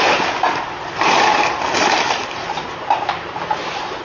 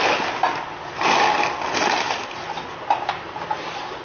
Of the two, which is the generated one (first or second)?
first